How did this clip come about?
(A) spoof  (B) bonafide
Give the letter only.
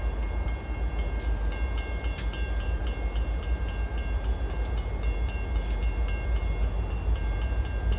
B